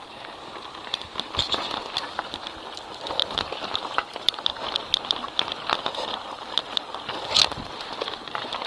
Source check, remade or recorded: recorded